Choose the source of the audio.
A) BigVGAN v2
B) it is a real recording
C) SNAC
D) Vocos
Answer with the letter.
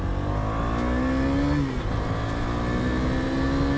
B